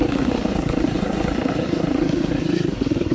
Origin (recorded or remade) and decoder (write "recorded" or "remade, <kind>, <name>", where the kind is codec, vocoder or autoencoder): remade, codec, SNAC